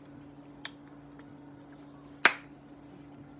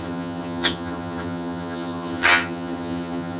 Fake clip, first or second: second